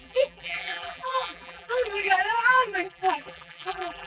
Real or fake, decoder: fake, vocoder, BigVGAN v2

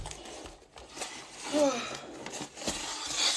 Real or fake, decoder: real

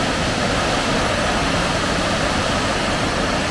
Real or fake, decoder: real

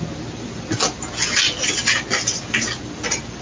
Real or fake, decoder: real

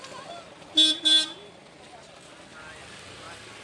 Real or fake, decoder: real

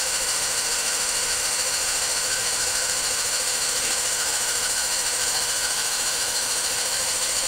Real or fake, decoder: fake, autoencoder, DAC-VAE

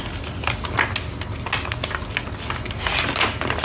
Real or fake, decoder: real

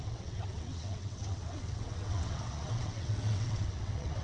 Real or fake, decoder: fake, vocoder, WaveNeXt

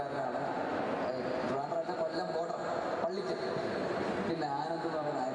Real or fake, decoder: real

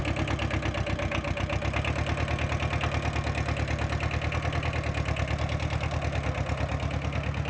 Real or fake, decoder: real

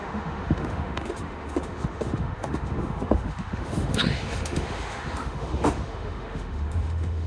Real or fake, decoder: fake, autoencoder, DAC-VAE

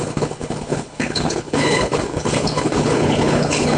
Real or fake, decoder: fake, codec, HILCodec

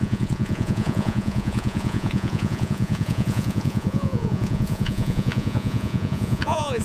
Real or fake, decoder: fake, vocoder, Vocos